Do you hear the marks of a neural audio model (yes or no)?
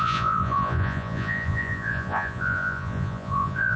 yes